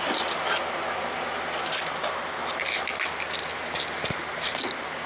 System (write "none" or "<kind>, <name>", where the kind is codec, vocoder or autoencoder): none